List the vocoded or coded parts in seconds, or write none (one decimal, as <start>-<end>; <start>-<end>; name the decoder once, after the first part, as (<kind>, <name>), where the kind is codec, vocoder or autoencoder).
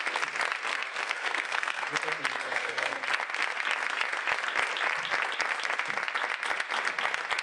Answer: 0.7-1.9 (codec, SNAC); 2.4-3.0